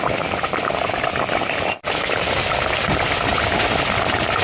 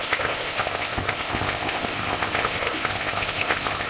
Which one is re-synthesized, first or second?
second